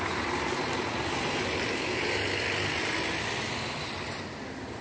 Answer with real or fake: real